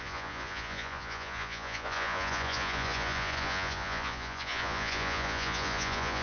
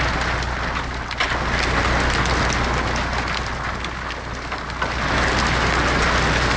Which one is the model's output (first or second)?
first